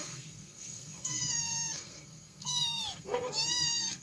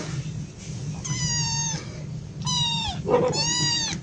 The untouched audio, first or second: second